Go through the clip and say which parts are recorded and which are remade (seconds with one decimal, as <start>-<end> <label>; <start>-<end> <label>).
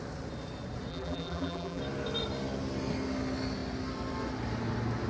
0.0-0.9 recorded; 0.9-1.8 remade; 1.8-5.1 recorded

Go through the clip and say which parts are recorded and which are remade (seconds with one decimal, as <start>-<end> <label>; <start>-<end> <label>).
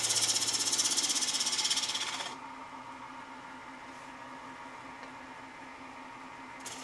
0.0-6.8 recorded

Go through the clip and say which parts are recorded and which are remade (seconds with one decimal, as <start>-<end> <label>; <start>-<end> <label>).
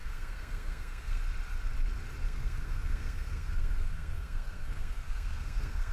0.0-1.2 remade; 1.2-2.2 recorded; 2.2-5.9 remade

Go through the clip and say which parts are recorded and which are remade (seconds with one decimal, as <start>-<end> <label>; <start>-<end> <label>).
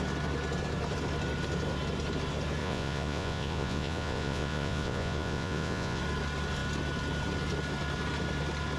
0.0-2.6 recorded; 2.6-6.0 remade; 6.0-8.8 recorded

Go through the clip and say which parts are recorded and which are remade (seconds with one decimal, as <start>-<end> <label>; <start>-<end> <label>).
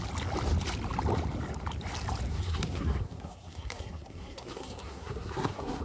0.0-2.3 recorded; 2.3-5.8 remade